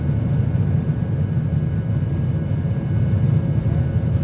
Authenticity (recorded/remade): recorded